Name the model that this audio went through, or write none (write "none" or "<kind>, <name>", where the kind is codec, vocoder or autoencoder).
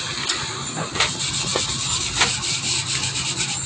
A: none